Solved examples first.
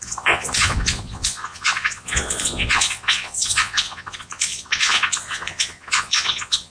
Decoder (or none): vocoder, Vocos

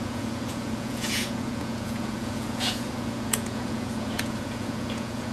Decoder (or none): vocoder, Vocos